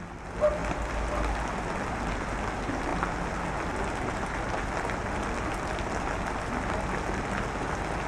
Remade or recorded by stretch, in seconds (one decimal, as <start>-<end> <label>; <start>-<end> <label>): 0.0-8.1 recorded